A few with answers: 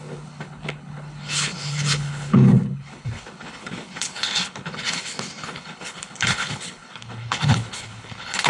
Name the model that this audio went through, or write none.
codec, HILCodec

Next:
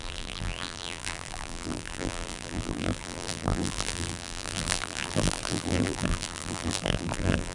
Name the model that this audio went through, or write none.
vocoder, BigVGAN v2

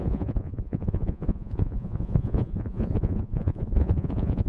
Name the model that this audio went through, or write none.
vocoder, Vocos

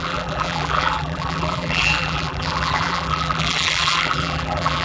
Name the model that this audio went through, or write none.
vocoder, BigVGAN v2